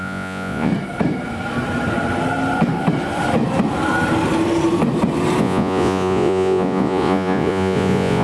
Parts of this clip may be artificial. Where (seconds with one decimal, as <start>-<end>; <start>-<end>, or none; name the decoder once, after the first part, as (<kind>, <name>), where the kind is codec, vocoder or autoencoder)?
0.0-0.7 (vocoder, Vocos); 5.4-8.2